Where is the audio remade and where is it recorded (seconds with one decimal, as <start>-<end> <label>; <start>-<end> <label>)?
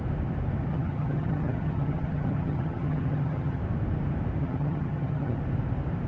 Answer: 0.0-0.7 recorded; 0.7-3.6 remade; 3.6-4.4 recorded; 4.4-5.4 remade; 5.4-6.1 recorded